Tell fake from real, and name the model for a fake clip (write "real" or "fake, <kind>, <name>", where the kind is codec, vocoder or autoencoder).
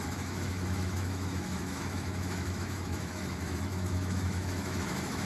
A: fake, autoencoder, DAC-VAE